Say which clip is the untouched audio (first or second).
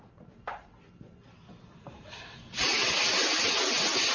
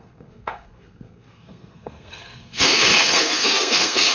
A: first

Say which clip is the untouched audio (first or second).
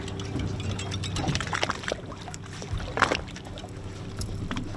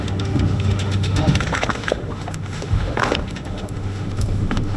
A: first